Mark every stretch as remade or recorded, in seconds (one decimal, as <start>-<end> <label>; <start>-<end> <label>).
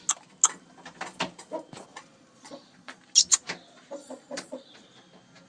0.0-1.9 recorded; 1.9-3.0 remade; 3.0-4.0 recorded; 4.0-4.9 remade; 4.9-5.5 recorded